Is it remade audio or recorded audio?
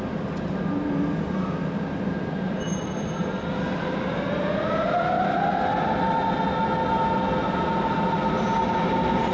recorded